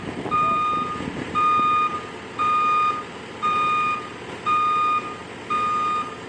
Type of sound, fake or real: real